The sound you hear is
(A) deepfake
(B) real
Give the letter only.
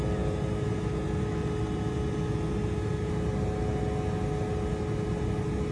B